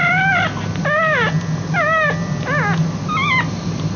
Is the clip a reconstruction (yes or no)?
no